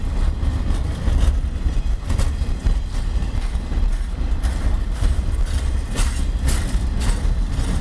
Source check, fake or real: real